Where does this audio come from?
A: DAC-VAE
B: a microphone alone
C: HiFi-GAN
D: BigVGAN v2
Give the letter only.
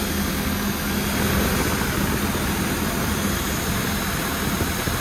B